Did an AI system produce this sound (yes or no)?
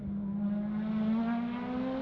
no